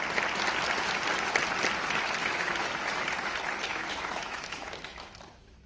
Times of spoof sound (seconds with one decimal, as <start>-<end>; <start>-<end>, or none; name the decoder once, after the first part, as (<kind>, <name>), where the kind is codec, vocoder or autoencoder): 2.2-2.7 (autoencoder, DAC-VAE); 3.7-5.7